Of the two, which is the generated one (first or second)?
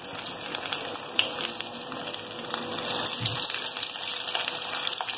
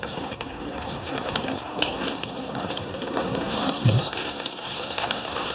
second